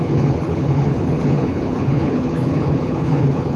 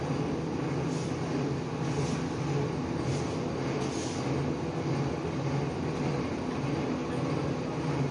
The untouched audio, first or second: second